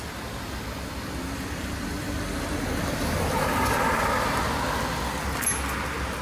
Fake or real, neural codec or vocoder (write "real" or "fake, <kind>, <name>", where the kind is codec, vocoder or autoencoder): real